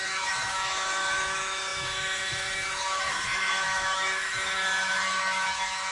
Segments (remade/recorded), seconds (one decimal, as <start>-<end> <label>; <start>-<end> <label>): 0.0-5.9 remade